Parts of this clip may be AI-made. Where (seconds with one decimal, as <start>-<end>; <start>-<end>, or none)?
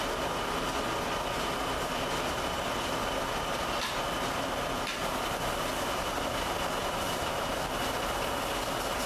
6.8-7.5